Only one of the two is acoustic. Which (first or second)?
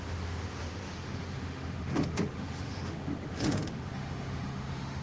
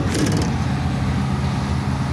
second